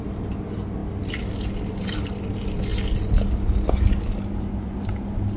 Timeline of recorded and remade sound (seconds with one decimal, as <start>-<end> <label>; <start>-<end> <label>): 0.0-5.4 recorded